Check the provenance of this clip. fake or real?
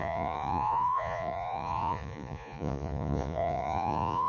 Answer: fake